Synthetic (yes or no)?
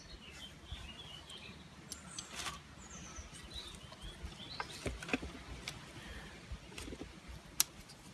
no